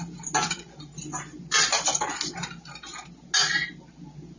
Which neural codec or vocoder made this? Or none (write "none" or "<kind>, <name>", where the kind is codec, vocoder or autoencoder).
none